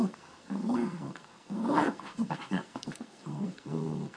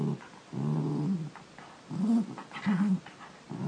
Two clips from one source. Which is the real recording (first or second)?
second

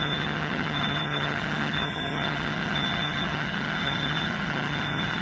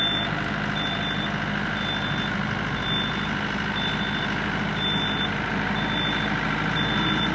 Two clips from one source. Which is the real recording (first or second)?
second